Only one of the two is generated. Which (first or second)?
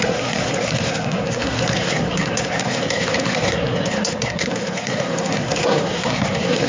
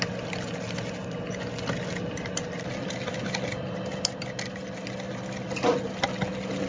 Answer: first